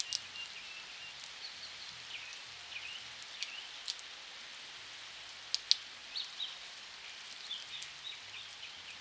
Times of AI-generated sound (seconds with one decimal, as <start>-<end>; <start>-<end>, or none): 0.4-1.0; 2.3-4.2; 6.0-7.4